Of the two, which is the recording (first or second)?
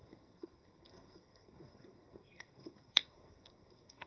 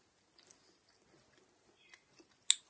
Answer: second